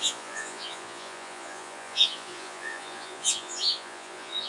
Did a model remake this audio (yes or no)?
yes